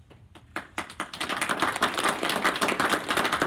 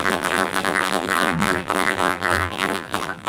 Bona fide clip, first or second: first